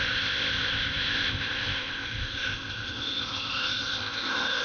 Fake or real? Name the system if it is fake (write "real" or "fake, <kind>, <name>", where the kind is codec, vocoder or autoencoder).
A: fake, codec, ZipCodec